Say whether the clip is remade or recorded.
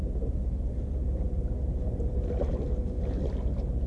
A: recorded